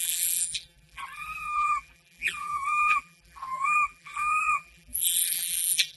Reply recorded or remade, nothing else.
remade